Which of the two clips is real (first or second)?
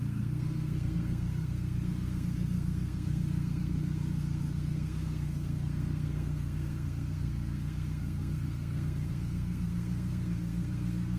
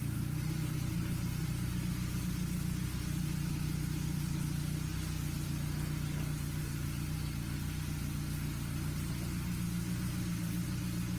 second